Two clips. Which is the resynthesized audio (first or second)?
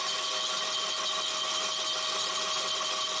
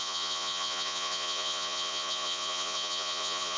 second